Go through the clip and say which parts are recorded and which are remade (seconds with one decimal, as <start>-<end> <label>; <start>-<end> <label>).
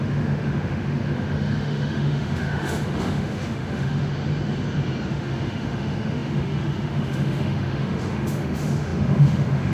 0.0-4.1 remade; 4.1-5.1 recorded; 5.1-9.7 remade